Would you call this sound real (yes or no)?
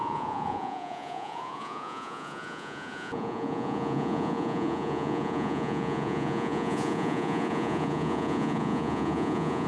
no